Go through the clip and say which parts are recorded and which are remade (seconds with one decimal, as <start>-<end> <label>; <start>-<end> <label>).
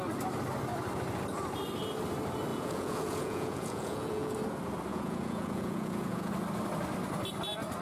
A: 0.0-2.5 recorded; 2.5-4.4 remade; 4.4-4.9 recorded; 4.9-6.3 remade; 6.3-7.8 recorded